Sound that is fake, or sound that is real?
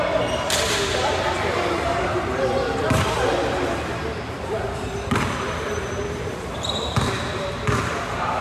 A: real